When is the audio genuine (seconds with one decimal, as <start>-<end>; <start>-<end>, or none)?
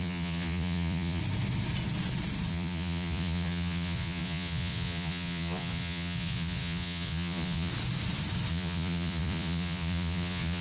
1.2-2.5; 7.7-8.5